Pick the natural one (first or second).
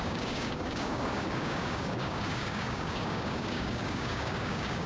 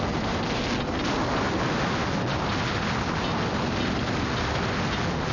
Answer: second